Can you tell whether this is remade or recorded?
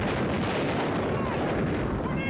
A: recorded